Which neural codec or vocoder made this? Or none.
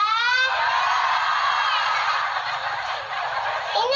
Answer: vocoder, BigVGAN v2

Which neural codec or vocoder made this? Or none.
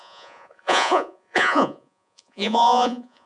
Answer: vocoder, Vocos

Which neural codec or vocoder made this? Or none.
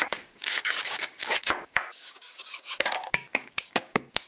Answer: codec, DAC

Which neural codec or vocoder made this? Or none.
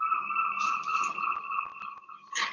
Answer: none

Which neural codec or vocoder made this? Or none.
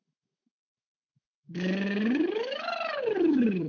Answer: autoencoder, DAC-VAE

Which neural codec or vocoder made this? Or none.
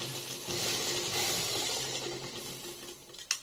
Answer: none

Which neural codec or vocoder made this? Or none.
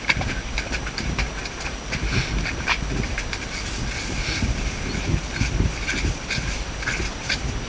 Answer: none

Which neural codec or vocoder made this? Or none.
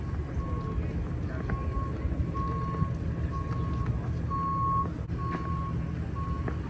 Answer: none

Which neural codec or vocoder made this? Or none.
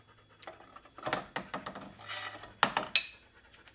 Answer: none